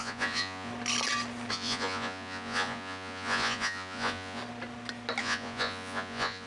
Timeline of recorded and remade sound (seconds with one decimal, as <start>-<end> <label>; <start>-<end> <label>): 0.0-0.7 remade; 0.7-1.5 recorded; 1.5-4.4 remade; 4.4-5.2 recorded; 5.2-6.5 remade